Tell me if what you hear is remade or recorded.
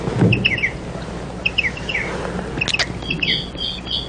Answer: recorded